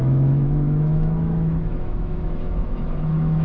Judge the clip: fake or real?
fake